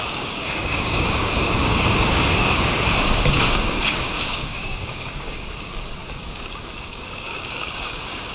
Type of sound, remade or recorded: remade